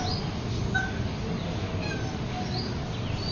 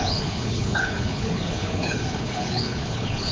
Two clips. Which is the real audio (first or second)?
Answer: first